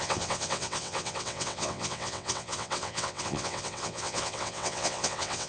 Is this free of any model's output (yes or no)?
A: no